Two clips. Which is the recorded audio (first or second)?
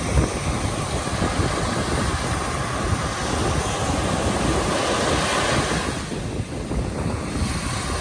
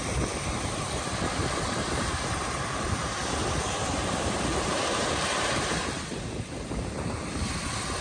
first